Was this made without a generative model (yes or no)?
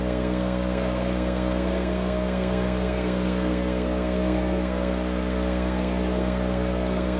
no